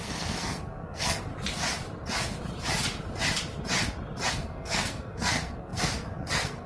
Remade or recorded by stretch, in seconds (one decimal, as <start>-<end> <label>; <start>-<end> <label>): 0.0-1.3 remade; 1.3-4.3 recorded; 4.3-6.7 remade